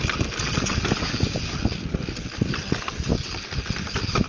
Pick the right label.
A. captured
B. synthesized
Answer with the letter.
A